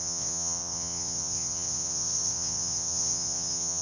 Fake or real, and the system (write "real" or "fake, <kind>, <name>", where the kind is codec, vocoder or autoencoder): fake, vocoder, WaveNeXt